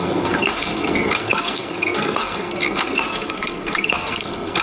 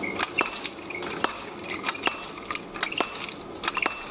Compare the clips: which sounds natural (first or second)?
second